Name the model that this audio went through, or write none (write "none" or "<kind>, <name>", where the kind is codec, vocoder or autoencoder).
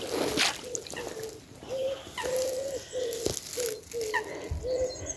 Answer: none